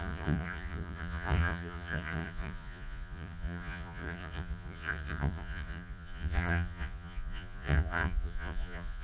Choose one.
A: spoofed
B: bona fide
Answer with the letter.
A